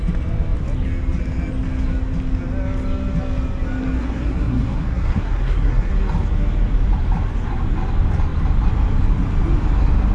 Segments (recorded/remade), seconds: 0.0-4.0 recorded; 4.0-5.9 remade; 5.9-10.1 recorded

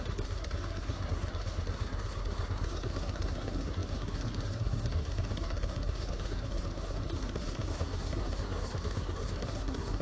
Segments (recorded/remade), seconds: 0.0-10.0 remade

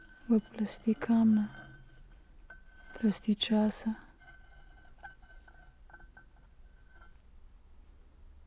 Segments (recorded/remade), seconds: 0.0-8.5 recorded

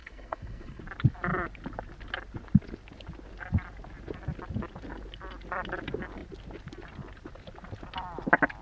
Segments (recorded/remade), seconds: 0.0-0.8 remade; 0.8-8.6 recorded

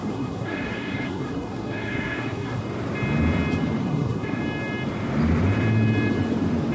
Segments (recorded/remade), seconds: 0.0-2.6 remade; 2.6-3.8 recorded; 3.8-4.4 remade; 4.4-6.7 recorded